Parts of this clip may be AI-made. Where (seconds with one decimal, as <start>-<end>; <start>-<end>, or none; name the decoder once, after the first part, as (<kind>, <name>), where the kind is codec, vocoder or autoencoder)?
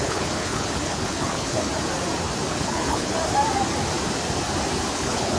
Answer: 0.0-1.7 (codec, HILCodec); 2.5-3.2; 4.9-5.4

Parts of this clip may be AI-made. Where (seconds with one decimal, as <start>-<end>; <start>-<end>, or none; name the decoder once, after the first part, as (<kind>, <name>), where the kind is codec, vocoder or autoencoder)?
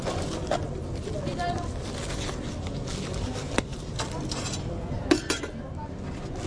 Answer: none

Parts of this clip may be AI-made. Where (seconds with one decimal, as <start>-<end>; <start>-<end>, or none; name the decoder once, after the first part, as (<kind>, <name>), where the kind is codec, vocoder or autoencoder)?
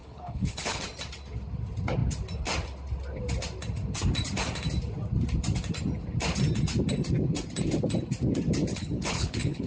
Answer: 0.0-0.8 (codec, HILCodec); 8.7-9.7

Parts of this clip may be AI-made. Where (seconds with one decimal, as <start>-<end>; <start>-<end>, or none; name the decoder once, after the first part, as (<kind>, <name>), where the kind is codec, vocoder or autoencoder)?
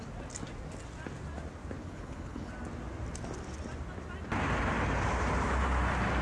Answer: 1.8-2.5 (codec, HILCodec)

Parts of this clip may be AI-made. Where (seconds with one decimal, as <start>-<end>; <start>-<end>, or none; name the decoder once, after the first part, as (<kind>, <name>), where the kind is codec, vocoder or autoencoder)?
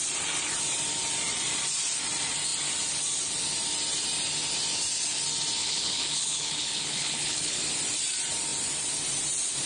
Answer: 5.6-7.6 (codec, HILCodec)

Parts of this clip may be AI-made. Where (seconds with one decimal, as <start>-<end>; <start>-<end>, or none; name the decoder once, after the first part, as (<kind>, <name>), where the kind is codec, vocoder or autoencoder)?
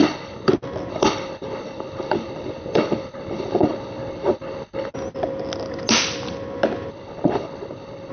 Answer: 0.0-0.5 (codec, HILCodec); 0.9-4.9; 6.9-8.1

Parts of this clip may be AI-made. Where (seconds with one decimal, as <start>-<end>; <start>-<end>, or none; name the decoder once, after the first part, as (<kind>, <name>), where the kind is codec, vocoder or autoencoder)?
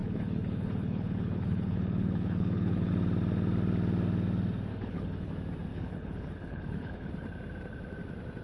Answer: 0.0-2.9 (codec, HILCodec); 4.7-5.3; 5.7-7.1